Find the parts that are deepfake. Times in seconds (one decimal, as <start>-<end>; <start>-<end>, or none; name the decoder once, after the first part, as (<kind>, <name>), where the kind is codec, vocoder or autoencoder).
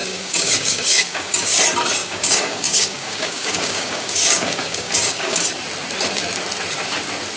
0.0-1.6 (codec, DAC); 2.0-5.4